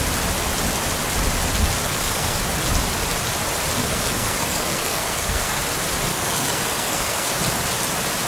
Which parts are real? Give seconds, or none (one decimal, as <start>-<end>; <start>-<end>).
0.0-1.8; 2.4-3.8; 5.6-6.1; 7.3-8.3